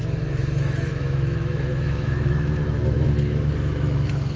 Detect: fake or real fake